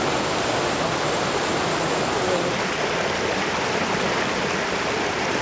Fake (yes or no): no